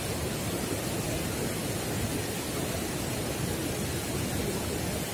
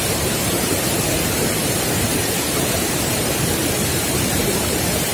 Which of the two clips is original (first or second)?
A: first